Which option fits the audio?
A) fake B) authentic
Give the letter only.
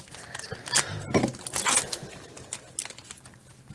B